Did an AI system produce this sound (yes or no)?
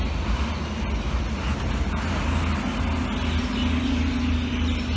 no